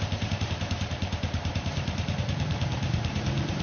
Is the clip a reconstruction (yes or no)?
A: yes